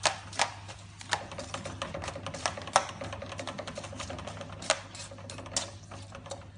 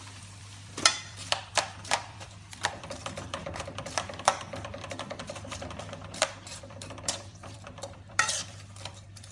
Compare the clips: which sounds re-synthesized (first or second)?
second